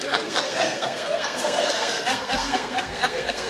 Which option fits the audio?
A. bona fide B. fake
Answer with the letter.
B